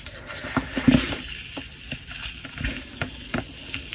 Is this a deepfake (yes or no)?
no